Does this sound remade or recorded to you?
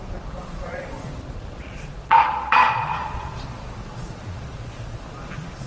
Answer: remade